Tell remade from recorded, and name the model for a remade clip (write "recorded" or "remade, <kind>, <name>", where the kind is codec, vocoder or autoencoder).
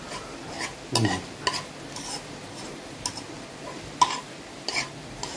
recorded